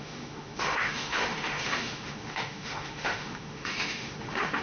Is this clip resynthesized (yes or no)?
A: yes